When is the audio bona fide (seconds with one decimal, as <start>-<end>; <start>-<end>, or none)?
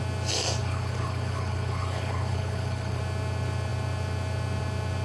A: 0.0-0.6; 3.0-5.0